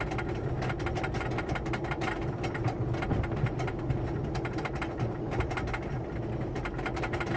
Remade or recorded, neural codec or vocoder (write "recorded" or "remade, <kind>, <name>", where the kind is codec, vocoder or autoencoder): recorded